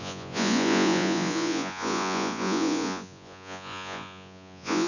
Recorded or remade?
remade